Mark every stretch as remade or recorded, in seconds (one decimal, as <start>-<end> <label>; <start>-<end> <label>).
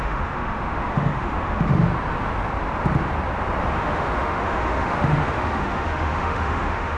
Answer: 0.0-1.9 remade; 1.9-3.7 recorded; 3.7-7.0 remade